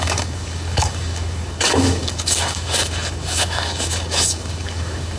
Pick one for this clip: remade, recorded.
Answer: remade